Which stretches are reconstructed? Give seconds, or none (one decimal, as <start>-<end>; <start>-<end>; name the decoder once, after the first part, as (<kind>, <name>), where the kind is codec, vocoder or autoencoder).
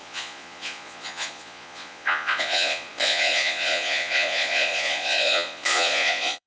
0.0-6.5 (vocoder, Vocos)